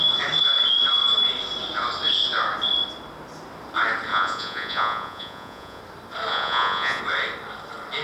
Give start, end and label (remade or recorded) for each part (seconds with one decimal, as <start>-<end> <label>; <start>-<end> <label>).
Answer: 0.0-4.1 recorded; 4.1-5.8 remade; 5.8-6.3 recorded; 6.3-7.0 remade; 7.0-8.0 recorded